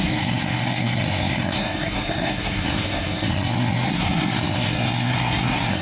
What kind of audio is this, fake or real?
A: fake